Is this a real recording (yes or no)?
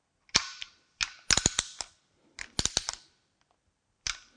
yes